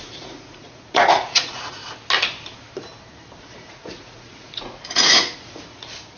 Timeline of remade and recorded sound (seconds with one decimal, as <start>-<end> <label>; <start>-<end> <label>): 0.0-1.8 remade; 1.8-3.4 recorded; 3.4-6.2 remade